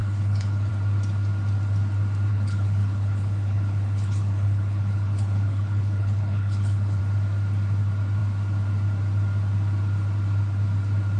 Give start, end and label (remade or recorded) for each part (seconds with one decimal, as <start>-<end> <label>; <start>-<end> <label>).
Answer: 0.0-0.7 remade; 0.7-2.3 recorded; 2.3-7.0 remade; 7.0-11.2 recorded